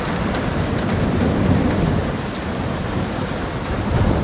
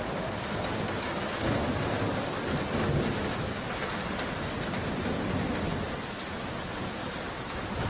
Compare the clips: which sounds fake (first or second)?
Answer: first